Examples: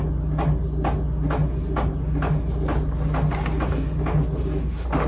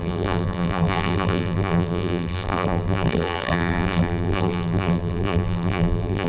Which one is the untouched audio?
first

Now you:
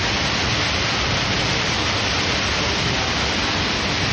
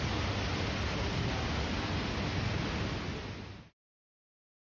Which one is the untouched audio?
second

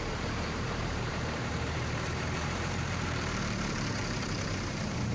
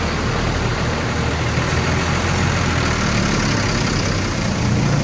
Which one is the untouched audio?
second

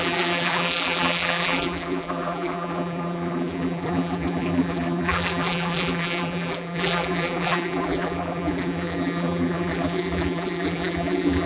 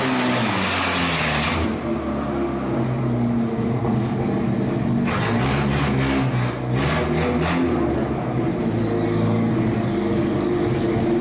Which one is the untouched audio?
second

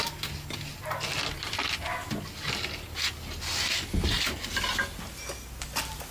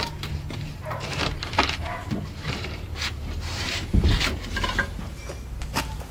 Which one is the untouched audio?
first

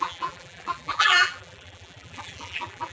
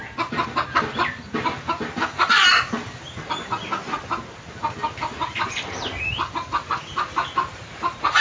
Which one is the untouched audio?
second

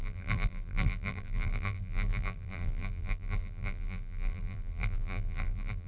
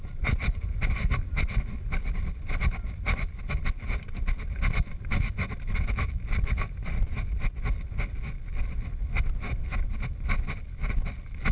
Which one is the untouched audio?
second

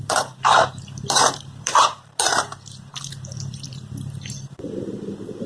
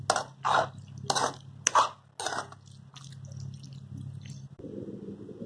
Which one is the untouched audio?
second